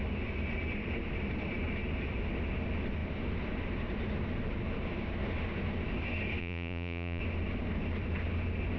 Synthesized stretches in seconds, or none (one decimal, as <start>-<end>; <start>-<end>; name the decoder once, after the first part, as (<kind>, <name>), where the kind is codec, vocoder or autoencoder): 6.4-7.2 (vocoder, Vocos)